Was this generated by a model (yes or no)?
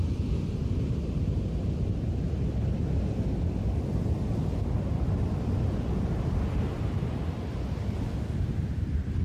no